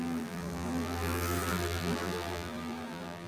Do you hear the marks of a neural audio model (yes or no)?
yes